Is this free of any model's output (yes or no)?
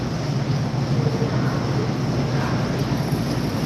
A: yes